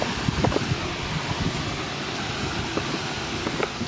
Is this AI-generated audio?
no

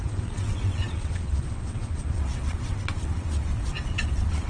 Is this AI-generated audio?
yes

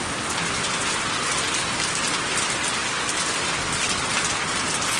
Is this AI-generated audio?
no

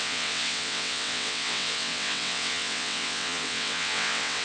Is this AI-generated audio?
yes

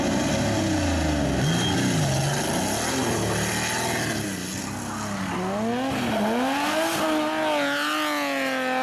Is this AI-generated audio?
no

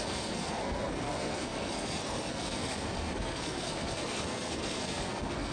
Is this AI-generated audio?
yes